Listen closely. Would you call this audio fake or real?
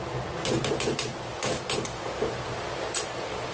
real